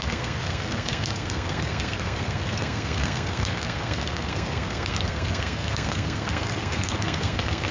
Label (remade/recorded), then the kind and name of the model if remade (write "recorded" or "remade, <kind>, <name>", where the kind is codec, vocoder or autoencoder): remade, codec, SNAC